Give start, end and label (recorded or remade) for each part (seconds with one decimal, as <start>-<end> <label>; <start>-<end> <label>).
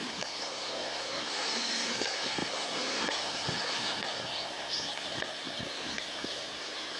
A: 0.0-7.0 remade